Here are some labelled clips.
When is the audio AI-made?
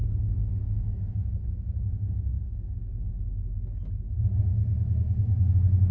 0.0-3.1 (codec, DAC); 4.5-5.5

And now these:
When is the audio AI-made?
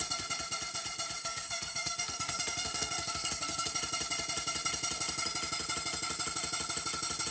1.2-3.7 (codec, SNAC)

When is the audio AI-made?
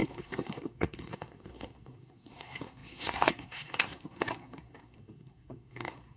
0.0-6.2 (codec, SNAC)